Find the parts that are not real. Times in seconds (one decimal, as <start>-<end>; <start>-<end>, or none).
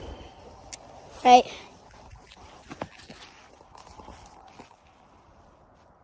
none